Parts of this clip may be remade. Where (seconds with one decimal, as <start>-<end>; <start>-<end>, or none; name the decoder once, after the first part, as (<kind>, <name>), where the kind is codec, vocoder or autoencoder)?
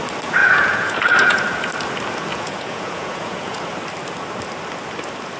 0.4-1.4 (vocoder, Vocos); 2.3-3.6